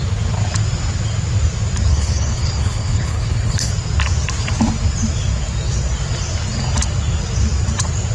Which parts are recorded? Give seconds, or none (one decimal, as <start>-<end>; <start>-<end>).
0.0-1.9; 3.7-8.1